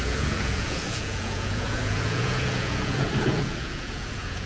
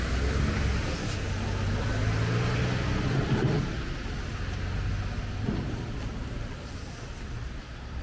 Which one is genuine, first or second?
second